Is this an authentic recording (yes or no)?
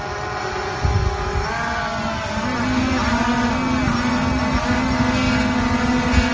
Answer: yes